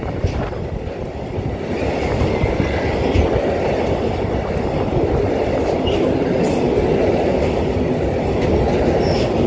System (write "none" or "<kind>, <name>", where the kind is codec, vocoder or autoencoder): none